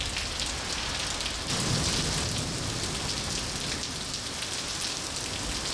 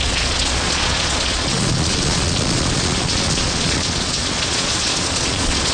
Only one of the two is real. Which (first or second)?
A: first